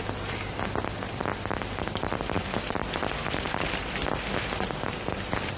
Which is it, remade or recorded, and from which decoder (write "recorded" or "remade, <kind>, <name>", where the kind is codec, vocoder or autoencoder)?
remade, vocoder, BigVGAN v2